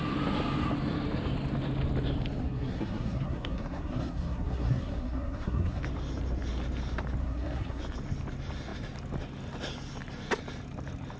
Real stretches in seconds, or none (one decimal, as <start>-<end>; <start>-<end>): 0.0-2.4; 5.8-7.2; 7.8-11.2